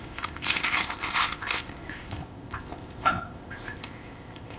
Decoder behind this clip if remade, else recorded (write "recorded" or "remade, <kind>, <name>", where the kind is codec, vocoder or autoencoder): remade, codec, ZipCodec